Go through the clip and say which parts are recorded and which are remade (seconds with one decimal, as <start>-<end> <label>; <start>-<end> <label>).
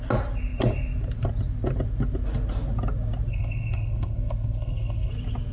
0.0-3.3 recorded; 3.3-5.1 remade; 5.1-5.5 recorded